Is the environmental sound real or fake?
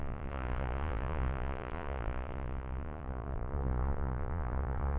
fake